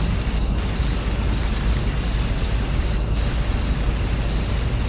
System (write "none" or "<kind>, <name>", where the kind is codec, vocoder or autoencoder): none